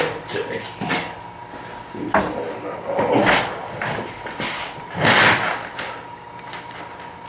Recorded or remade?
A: recorded